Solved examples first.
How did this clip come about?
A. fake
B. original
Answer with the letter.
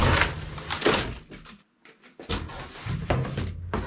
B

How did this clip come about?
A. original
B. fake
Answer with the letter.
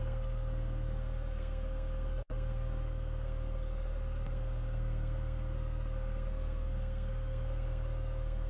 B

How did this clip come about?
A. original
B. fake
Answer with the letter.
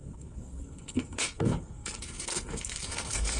B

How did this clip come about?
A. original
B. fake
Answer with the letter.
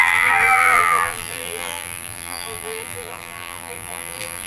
B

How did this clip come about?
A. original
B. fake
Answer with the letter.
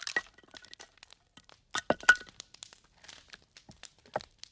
A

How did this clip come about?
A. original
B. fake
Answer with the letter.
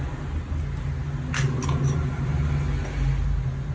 A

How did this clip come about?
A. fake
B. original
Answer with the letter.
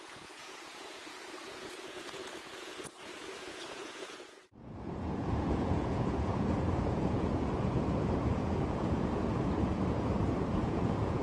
A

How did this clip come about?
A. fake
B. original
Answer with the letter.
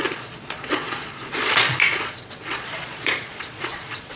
A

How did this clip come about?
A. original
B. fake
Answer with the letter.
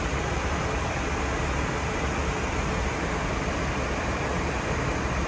A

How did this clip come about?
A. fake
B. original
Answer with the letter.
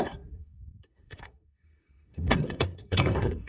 A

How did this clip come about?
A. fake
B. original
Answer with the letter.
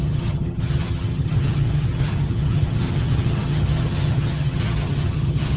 A